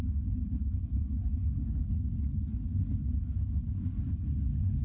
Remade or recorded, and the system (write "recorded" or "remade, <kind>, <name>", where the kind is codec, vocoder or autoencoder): remade, codec, HILCodec